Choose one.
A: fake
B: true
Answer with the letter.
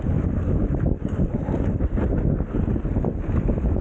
B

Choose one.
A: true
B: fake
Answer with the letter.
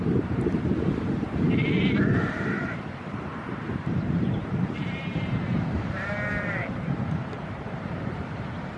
B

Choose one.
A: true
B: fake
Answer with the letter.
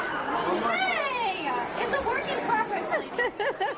B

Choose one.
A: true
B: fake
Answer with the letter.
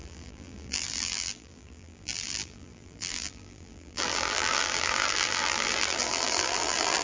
B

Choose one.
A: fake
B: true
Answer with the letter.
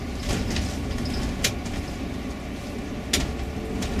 B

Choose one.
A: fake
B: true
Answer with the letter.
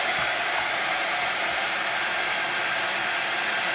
B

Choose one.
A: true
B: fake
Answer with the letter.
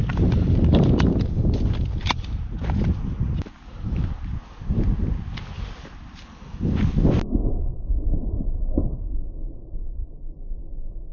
A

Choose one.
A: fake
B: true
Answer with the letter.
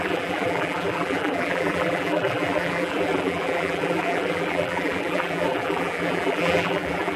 A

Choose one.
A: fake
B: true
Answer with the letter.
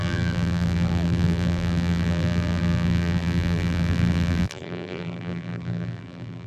A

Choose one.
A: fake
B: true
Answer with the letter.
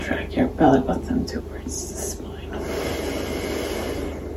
B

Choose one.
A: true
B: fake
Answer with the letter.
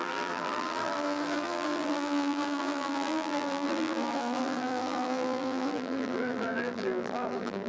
B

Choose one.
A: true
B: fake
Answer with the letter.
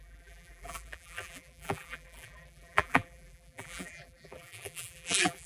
B